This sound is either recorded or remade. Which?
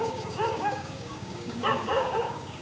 remade